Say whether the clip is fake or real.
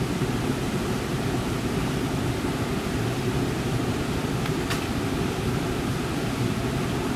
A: real